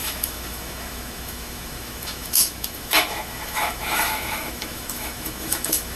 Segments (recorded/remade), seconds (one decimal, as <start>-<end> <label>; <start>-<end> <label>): 0.0-6.0 remade